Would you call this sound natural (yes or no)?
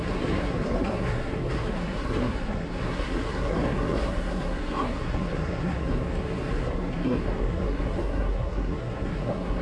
no